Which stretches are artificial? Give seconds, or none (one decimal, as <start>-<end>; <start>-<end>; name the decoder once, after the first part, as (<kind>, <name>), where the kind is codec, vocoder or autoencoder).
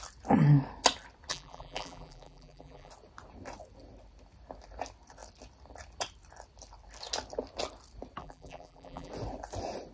1.3-2.9 (vocoder, BigVGAN v2); 8.2-9.1